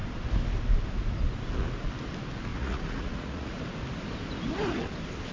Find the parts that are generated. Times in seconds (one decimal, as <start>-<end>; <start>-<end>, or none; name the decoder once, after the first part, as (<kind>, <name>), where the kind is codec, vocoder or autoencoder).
2.5-3.6 (vocoder, Vocos)